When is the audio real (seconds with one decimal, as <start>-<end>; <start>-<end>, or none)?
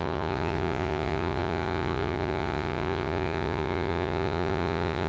none